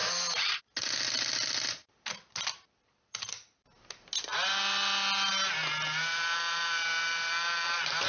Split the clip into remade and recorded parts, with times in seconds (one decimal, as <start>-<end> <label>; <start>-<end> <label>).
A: 0.0-8.1 recorded